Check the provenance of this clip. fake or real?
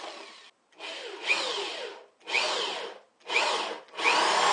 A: real